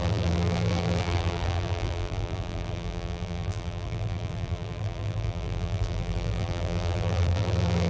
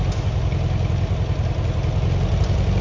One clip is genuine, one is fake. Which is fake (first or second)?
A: first